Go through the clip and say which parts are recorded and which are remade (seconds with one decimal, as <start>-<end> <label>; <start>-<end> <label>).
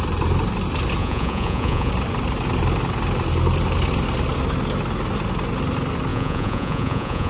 0.0-1.0 recorded; 1.0-1.9 remade; 1.9-6.1 recorded; 6.1-7.3 remade